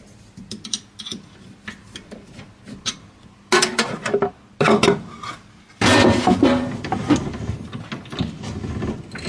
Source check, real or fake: real